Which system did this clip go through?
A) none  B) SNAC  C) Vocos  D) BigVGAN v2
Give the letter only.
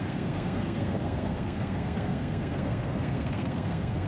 B